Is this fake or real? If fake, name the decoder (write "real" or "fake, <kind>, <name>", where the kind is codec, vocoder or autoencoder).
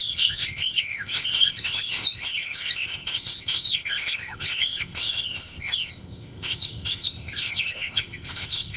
fake, codec, ZipCodec